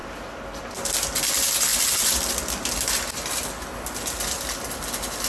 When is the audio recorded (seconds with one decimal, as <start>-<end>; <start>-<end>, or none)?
0.0-5.3

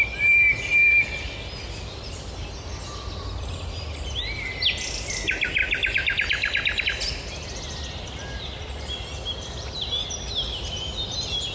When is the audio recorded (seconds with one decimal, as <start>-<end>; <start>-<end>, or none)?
0.0-11.5

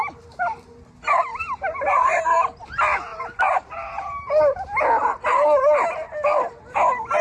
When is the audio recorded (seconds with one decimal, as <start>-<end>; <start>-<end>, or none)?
0.0-1.3; 2.2-7.2

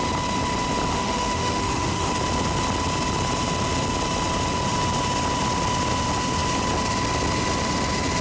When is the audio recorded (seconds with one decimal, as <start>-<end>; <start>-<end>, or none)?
0.0-0.9; 2.1-8.2

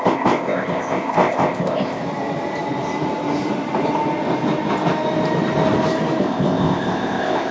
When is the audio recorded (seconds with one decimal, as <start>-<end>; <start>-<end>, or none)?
2.0-6.2